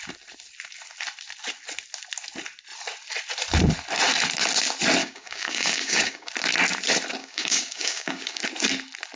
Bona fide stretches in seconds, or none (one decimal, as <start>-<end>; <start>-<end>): 0.0-5.0; 6.3-7.2; 8.4-9.2